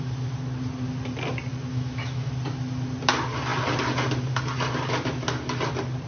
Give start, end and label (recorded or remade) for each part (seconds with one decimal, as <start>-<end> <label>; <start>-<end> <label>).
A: 0.0-1.7 recorded; 1.7-2.3 remade; 2.3-6.1 recorded